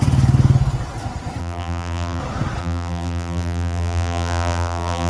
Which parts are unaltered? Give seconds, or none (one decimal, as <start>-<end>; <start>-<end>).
0.0-1.4; 2.2-2.6